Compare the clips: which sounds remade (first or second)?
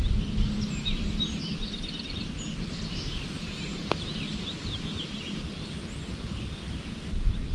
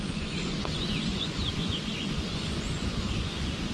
second